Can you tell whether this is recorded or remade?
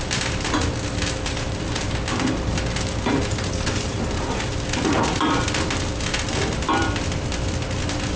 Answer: remade